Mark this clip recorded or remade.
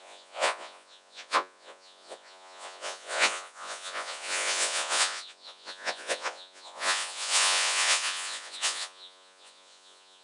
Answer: remade